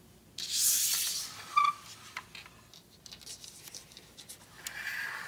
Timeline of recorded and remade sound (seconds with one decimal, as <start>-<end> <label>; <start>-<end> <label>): 0.0-5.3 recorded